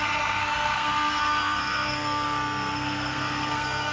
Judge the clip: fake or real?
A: fake